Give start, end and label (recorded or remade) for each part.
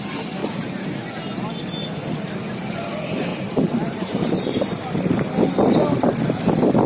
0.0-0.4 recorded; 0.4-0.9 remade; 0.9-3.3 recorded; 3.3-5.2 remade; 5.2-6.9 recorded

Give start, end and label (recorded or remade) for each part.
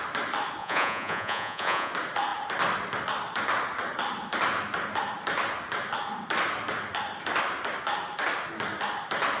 0.0-0.6 recorded; 0.6-1.9 remade; 1.9-9.4 recorded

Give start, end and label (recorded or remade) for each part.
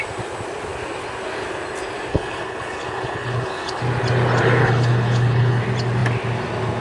0.0-2.1 recorded; 2.1-3.8 remade; 3.8-4.6 recorded; 4.6-5.6 remade; 5.6-6.8 recorded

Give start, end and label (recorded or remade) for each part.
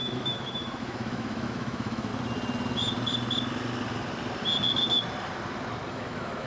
0.0-2.1 remade; 2.1-5.9 recorded; 5.9-6.5 remade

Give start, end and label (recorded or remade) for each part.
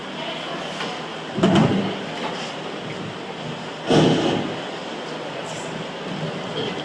0.0-1.1 recorded; 1.1-1.7 remade; 1.7-4.9 recorded; 4.9-5.4 remade; 5.4-6.8 recorded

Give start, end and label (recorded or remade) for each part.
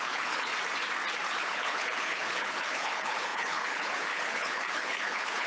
0.0-0.5 remade; 0.5-1.3 recorded; 1.3-5.5 remade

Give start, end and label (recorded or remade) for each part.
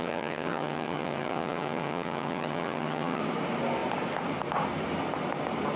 0.0-3.2 remade; 3.2-5.8 recorded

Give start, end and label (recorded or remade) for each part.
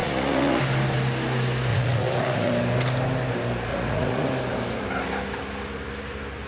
0.0-0.6 remade; 0.6-1.7 recorded; 1.7-2.5 remade; 2.5-3.7 recorded; 3.7-4.3 remade; 4.3-6.5 recorded